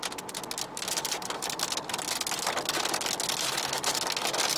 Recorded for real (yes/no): yes